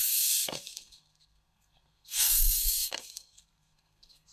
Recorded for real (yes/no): no